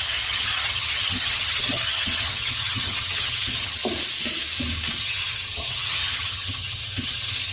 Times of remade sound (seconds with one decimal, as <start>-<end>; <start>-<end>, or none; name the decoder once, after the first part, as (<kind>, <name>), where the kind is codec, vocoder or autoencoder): 0.0-3.8 (vocoder, HiFi-GAN); 5.0-7.5

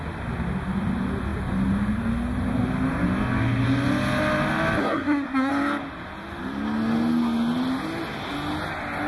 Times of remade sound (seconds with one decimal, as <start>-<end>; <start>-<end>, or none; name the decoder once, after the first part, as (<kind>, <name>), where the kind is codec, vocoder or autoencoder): 4.8-5.5 (codec, SNAC)

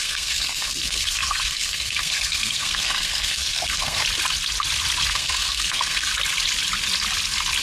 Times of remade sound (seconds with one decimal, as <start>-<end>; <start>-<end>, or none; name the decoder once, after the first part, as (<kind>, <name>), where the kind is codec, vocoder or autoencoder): 0.0-4.0 (codec, SNAC); 5.1-6.1

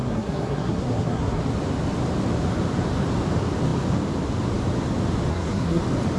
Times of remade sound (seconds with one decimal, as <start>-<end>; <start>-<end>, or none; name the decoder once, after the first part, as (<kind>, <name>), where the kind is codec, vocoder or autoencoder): 0.0-1.4 (codec, SNAC); 5.3-5.8

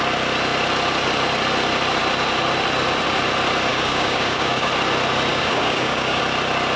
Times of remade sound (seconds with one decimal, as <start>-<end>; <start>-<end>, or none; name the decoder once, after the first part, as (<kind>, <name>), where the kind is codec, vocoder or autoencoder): 3.7-4.7 (codec, DAC); 5.3-6.2

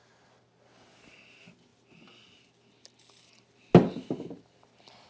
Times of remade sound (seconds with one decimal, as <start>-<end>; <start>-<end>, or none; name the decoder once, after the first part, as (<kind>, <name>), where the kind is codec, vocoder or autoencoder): none

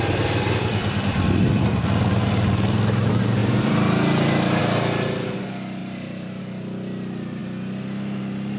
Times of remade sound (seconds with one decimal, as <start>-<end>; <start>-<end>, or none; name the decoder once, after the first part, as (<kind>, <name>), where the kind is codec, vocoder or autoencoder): 3.4-4.6 (vocoder, BigVGAN v2); 5.8-6.4